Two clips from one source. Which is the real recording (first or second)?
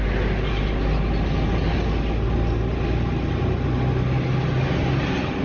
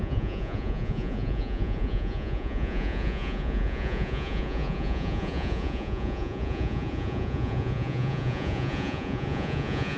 first